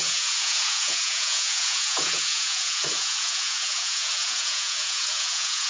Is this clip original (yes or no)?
no